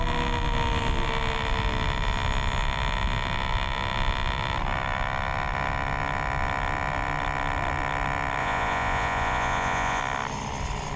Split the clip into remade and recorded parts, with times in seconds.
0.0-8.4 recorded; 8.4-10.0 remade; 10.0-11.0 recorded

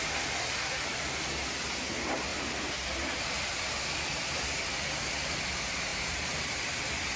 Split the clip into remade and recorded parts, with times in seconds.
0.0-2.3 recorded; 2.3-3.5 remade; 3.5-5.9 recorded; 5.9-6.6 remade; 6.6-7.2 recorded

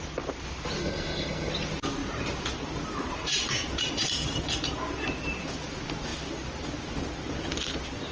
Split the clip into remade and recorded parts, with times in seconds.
0.0-0.8 recorded; 0.8-1.5 remade; 1.5-8.1 recorded

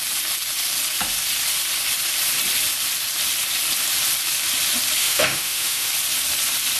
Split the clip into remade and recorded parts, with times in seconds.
0.0-5.0 recorded; 5.0-5.9 remade; 5.9-6.8 recorded